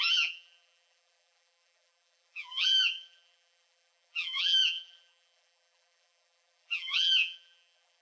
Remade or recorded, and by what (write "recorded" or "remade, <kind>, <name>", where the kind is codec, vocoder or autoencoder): remade, vocoder, BigVGAN v2